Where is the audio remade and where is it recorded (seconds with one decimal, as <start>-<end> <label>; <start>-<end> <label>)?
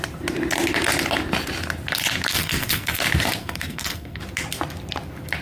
0.0-2.3 recorded; 2.3-3.0 remade; 3.0-3.4 recorded; 3.4-4.2 remade; 4.2-5.4 recorded